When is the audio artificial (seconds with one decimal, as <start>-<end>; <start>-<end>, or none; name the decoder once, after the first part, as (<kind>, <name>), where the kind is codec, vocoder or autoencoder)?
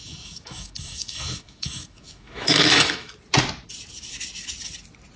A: 0.0-3.1 (autoencoder, DAC-VAE)